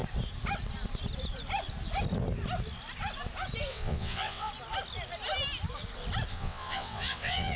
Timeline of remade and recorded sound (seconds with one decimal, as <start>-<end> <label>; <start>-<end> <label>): 0.0-3.7 recorded; 3.7-4.5 remade; 4.5-6.3 recorded; 6.3-7.6 remade